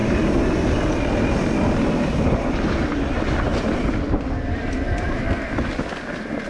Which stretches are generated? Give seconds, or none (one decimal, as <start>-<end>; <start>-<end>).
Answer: none